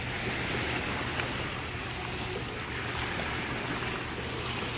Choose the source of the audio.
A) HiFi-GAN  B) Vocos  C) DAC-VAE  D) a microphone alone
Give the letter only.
D